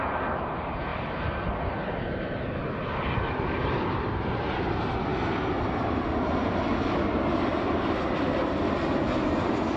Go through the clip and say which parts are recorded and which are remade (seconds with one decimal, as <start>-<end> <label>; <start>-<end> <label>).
0.0-9.8 recorded